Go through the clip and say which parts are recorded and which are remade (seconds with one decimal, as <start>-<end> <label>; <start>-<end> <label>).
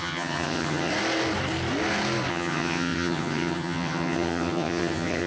0.0-0.9 remade; 0.9-2.3 recorded; 2.3-5.3 remade